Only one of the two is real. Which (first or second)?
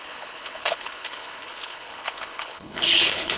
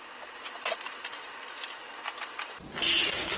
second